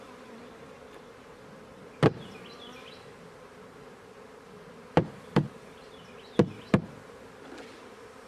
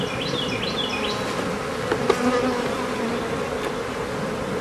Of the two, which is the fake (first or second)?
first